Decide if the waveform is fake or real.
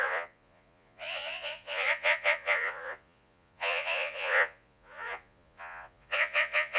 fake